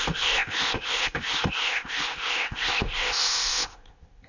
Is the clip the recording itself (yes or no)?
no